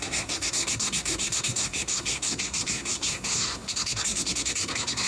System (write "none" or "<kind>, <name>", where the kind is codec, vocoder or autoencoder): codec, SNAC